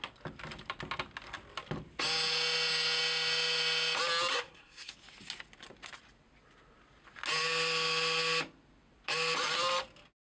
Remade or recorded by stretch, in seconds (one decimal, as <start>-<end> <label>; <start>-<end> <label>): 0.0-4.3 recorded; 4.3-4.9 remade; 4.9-10.3 recorded